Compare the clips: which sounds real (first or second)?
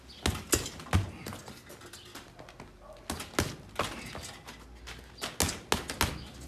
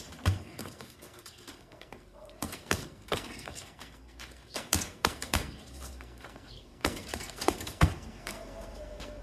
first